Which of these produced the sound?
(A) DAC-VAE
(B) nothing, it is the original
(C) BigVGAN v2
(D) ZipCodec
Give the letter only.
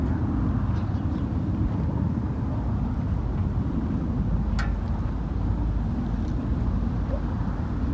B